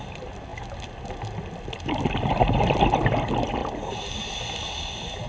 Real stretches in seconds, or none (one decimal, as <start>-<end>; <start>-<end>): 0.0-5.3